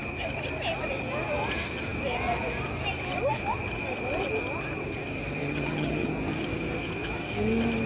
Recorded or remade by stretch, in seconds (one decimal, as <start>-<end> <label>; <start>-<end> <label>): 0.0-5.4 recorded; 5.4-6.1 remade; 6.1-7.9 recorded